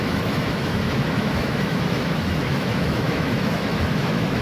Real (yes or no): no